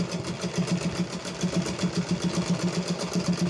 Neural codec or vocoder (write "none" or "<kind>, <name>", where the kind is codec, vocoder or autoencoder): none